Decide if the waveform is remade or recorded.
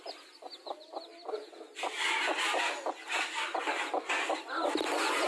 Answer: recorded